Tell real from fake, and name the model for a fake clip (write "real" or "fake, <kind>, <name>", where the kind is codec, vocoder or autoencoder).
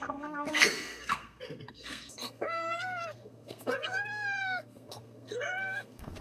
fake, codec, SNAC